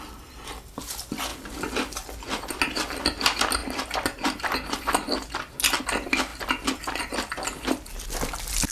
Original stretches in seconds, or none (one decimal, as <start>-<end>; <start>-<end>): 0.0-8.7